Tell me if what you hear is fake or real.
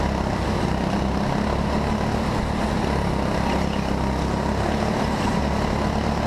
real